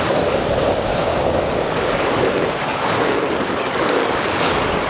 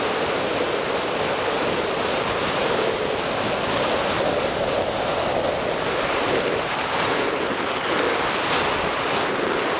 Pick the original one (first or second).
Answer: second